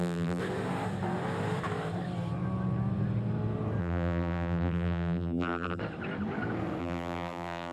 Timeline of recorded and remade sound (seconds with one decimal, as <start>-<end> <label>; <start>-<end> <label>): 0.0-0.4 remade; 0.4-3.8 recorded; 3.8-5.8 remade; 5.8-6.8 recorded; 6.8-7.7 remade